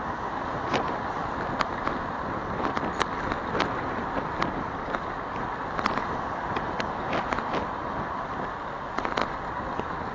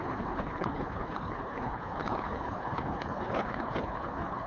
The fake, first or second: second